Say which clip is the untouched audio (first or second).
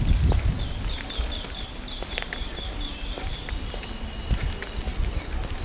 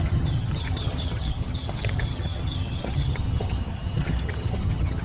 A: first